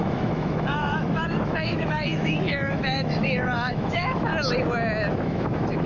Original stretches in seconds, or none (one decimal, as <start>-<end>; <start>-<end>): 4.3-5.1